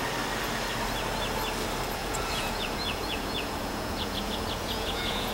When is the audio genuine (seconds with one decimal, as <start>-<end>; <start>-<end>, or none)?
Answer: 0.0-2.0